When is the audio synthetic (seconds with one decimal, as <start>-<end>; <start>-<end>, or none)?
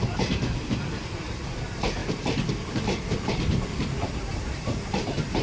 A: 0.0-5.4